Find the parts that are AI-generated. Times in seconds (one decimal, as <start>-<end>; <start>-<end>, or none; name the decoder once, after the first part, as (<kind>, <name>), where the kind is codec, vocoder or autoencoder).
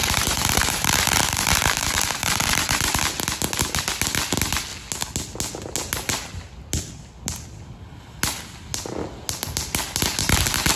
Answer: 0.0-2.8 (vocoder, BigVGAN v2)